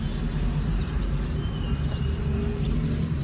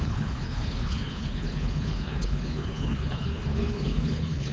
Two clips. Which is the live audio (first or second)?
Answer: first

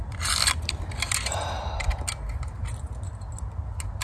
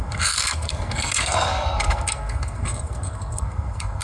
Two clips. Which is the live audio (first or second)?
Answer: first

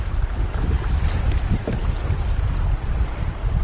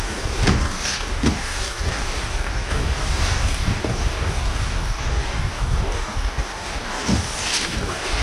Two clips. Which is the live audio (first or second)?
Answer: first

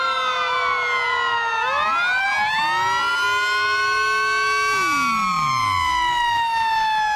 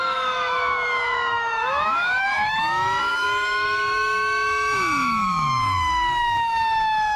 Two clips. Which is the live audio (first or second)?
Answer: first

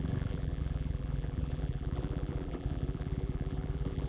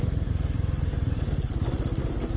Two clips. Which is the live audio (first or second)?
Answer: second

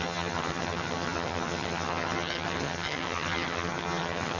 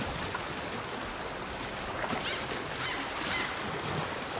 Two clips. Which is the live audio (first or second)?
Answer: second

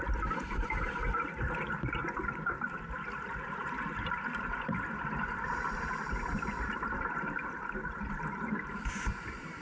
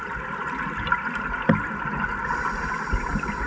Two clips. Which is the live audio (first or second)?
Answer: second